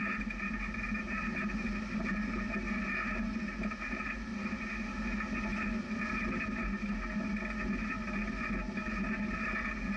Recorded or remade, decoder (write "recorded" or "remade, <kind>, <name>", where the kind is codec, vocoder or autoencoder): recorded